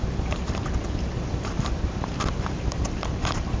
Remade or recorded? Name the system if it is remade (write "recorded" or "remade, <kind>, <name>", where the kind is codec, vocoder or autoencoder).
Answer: remade, vocoder, BigVGAN v2